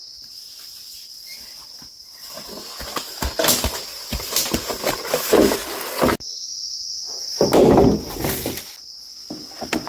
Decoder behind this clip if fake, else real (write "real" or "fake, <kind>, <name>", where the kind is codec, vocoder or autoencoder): real